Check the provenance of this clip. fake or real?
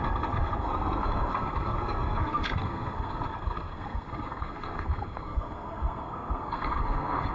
fake